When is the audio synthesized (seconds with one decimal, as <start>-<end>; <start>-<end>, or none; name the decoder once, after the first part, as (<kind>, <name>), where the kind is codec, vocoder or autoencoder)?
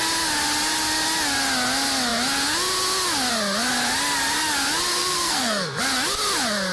5.0-5.8 (codec, SNAC)